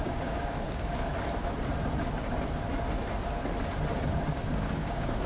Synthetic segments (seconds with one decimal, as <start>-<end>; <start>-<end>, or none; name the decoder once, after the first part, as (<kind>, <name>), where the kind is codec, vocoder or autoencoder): 0.0-1.1 (codec, DAC); 4.3-5.3